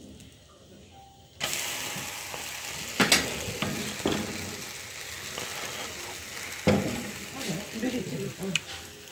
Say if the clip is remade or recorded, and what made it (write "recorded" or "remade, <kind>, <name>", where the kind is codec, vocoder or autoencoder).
recorded